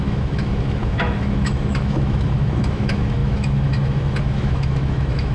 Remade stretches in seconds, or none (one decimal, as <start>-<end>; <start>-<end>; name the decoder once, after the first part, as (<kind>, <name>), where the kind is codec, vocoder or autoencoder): 0.0-5.3 (autoencoder, DAC-VAE)